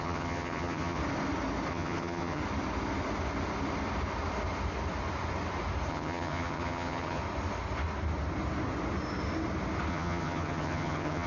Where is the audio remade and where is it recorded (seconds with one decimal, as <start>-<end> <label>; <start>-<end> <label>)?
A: 0.0-1.0 remade; 1.0-1.7 recorded; 1.7-2.4 remade; 2.4-5.9 recorded; 5.9-7.2 remade; 7.2-9.9 recorded; 9.9-11.3 remade